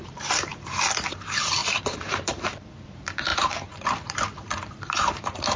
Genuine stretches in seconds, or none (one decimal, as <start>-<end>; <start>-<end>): 0.5-1.1